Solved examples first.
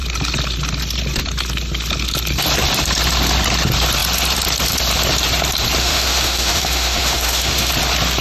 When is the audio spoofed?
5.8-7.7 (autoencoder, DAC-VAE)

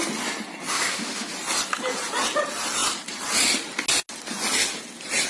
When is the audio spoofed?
0.7-1.3 (autoencoder, DAC-VAE)

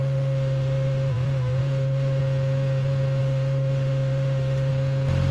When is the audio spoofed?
0.0-1.1 (autoencoder, DAC-VAE); 1.6-2.2; 3.2-4.7

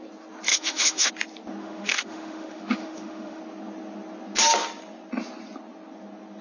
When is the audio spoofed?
0.5-1.1 (autoencoder, DAC-VAE); 1.6-3.4

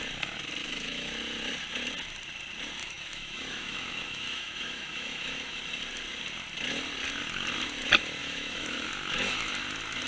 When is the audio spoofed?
0.6-1.1 (autoencoder, DAC-VAE); 2.8-5.6; 8.2-9.5

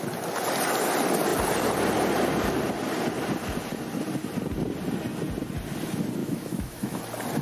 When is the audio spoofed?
6.2-7.0 (autoencoder, DAC-VAE)